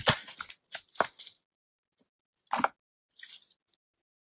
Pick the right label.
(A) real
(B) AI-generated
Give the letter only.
A